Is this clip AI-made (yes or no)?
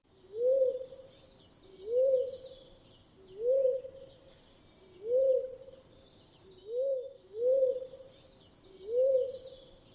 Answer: no